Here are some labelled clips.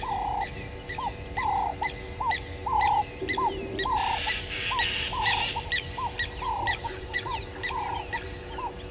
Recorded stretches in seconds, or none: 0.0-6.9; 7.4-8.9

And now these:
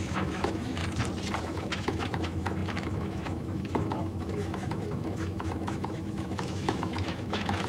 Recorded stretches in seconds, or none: 0.8-1.4

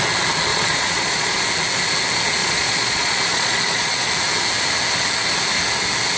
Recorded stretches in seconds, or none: 0.0-0.5; 1.4-2.4; 4.1-6.2

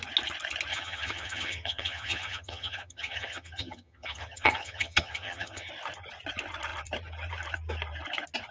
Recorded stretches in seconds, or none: 0.0-0.7; 5.7-8.5

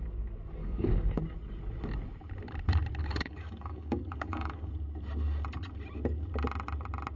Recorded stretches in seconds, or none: 0.0-0.6; 1.2-3.0; 4.7-7.2

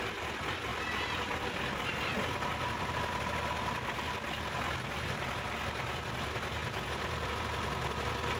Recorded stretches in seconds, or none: 0.0-8.4

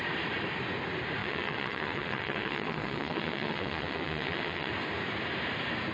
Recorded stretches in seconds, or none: 0.0-1.2; 4.7-5.9